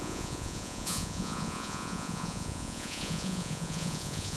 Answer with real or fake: fake